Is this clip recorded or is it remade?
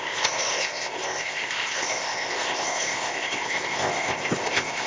remade